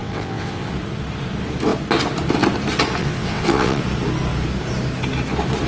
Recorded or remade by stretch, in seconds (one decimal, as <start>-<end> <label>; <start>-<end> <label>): 0.0-0.7 remade; 0.7-3.0 recorded; 3.0-3.8 remade; 3.8-5.7 recorded